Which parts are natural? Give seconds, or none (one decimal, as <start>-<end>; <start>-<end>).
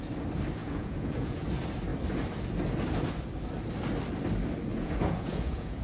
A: 0.0-0.6; 1.4-4.7